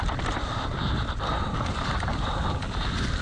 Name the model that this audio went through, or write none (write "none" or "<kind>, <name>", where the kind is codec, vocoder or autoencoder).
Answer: vocoder, BigVGAN v2